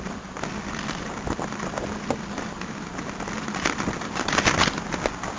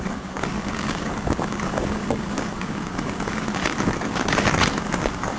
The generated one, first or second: second